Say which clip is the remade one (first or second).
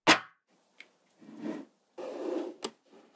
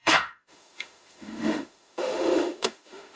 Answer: second